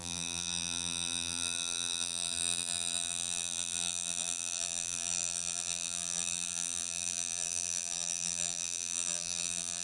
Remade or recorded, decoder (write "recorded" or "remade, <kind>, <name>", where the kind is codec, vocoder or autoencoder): remade, vocoder, BigVGAN v2